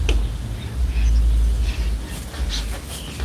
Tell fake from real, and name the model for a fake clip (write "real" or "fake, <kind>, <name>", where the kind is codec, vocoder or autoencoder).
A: real